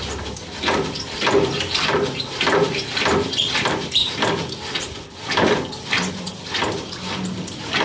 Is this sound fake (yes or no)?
yes